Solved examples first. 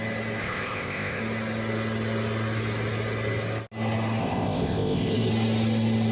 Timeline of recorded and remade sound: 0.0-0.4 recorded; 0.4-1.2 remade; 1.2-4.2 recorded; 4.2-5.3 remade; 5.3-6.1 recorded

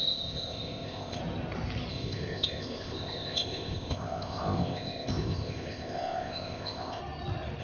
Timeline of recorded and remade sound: 0.0-1.2 remade; 1.2-1.9 recorded; 1.9-7.0 remade; 7.0-7.6 recorded

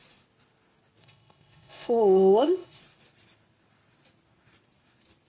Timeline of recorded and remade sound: 0.0-1.0 recorded; 1.0-2.8 remade; 2.8-5.3 recorded